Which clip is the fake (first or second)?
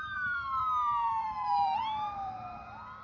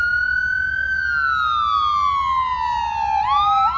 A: first